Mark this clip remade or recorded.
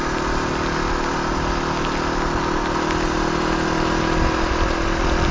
recorded